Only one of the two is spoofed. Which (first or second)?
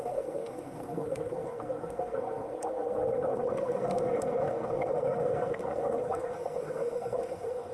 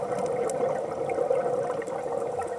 first